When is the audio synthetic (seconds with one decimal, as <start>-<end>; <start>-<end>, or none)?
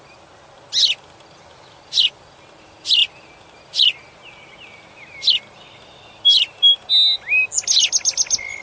none